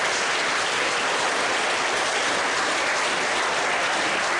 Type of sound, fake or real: real